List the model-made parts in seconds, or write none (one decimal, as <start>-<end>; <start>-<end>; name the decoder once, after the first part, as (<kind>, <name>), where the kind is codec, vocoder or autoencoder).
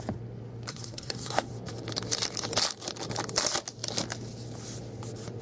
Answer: 0.7-1.5 (codec, SNAC)